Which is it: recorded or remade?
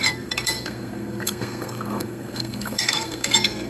remade